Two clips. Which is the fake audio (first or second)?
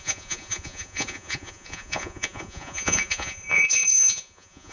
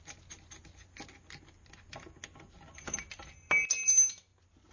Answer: first